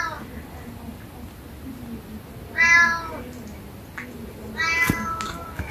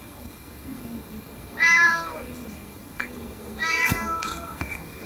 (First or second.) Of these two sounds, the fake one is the second